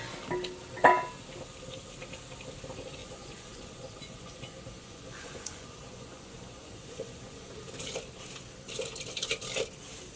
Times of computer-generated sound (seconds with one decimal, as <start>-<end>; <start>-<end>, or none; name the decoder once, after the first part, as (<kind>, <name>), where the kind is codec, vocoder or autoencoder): 3.0-7.5 (vocoder, Vocos)